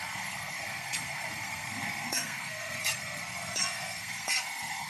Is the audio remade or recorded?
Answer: remade